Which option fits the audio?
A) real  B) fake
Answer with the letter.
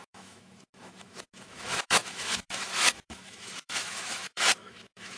B